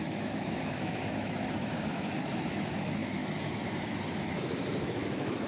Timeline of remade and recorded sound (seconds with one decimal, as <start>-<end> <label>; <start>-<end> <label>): 0.0-5.5 remade